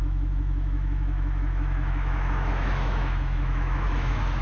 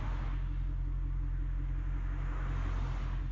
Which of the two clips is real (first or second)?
second